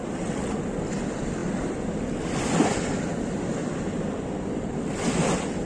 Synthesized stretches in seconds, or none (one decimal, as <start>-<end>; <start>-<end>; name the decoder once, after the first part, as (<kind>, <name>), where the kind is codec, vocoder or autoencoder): none